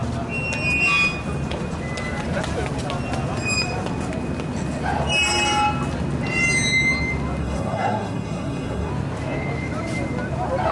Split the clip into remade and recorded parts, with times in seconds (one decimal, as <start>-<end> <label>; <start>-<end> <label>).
0.0-7.4 recorded; 7.4-8.9 remade; 8.9-10.7 recorded